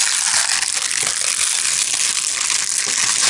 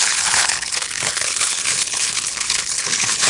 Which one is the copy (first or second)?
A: second